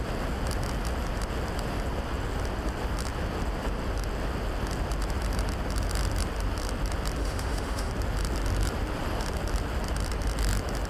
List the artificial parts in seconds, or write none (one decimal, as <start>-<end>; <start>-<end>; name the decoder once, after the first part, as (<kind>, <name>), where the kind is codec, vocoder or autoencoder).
7.2-7.9 (autoencoder, DAC-VAE)